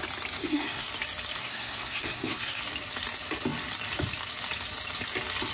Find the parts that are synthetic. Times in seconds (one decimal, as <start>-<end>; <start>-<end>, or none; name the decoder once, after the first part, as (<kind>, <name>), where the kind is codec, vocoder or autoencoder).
0.4-0.9 (codec, SNAC); 1.4-2.6